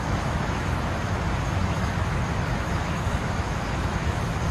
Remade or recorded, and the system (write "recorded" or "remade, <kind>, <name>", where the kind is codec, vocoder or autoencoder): remade, autoencoder, DAC-VAE